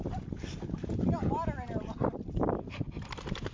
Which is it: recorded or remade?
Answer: recorded